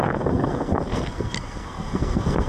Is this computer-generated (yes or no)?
yes